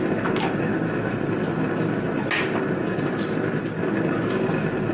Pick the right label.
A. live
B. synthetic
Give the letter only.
A